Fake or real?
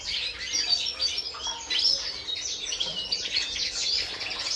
real